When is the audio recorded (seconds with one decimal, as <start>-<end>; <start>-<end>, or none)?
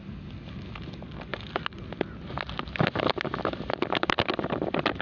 0.0-5.0